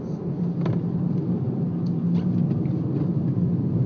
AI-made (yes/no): no